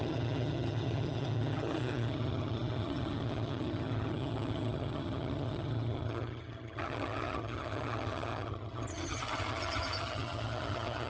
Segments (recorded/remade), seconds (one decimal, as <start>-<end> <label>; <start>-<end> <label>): 0.0-11.1 remade